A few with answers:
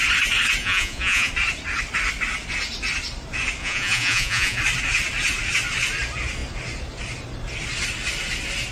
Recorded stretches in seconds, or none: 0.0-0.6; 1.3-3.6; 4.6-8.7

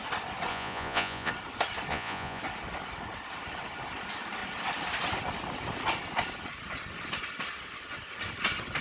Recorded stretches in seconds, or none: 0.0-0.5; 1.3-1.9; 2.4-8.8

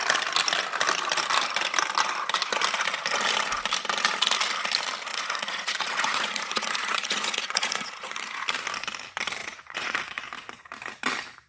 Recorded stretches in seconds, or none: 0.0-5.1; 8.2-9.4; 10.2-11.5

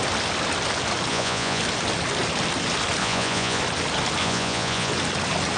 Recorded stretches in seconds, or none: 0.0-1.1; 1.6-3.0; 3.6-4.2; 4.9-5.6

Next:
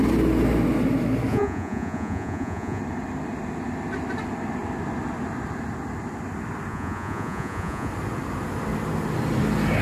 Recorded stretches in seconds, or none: 0.0-1.3; 2.8-6.7; 7.9-9.8